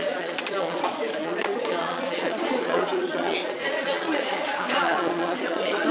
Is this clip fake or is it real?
fake